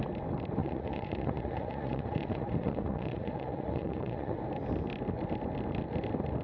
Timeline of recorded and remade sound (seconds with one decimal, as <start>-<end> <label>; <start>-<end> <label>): 0.0-0.6 recorded; 0.6-4.4 remade; 4.4-6.4 recorded

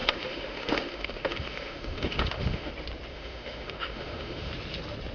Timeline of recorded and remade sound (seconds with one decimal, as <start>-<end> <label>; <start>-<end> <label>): 0.0-2.7 remade; 2.7-3.1 recorded; 3.1-4.5 remade; 4.5-5.1 recorded

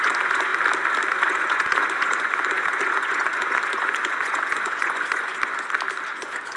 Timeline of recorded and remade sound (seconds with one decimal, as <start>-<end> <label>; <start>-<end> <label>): 0.0-0.5 remade; 0.5-1.1 recorded; 1.1-5.3 remade; 5.3-6.1 recorded; 6.1-6.6 remade

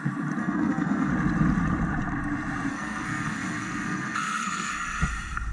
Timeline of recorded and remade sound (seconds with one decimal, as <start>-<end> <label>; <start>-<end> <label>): 0.0-0.4 recorded; 0.4-1.1 remade; 1.1-2.7 recorded; 2.7-5.1 remade; 5.1-5.5 recorded

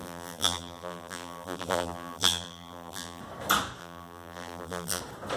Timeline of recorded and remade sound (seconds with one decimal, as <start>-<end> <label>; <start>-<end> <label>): 0.0-3.2 remade; 3.2-3.8 recorded; 3.8-5.0 remade; 5.0-5.4 recorded

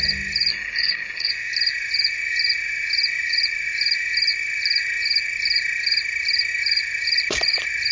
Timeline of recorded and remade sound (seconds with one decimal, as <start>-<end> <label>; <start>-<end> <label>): 0.0-0.5 recorded; 0.5-1.3 remade; 1.3-7.9 recorded